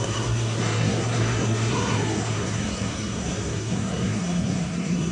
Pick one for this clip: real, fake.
fake